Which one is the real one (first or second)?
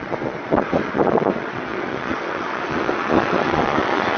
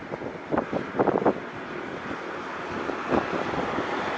second